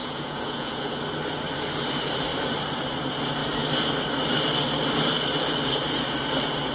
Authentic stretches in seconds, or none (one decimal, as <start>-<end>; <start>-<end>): 1.0-6.7